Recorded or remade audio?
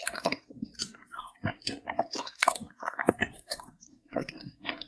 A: remade